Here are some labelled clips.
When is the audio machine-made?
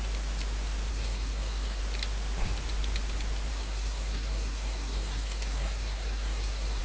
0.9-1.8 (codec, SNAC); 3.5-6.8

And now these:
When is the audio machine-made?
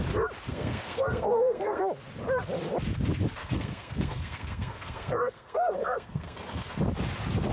0.5-1.8 (codec, SNAC); 3.4-6.8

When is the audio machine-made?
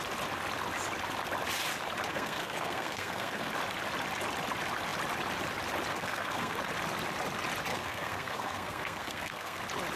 2.1-3.5 (codec, SNAC); 5.9-6.6; 7.7-9.6